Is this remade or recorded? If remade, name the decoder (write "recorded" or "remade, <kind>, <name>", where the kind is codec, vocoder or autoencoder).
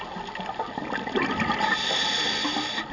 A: recorded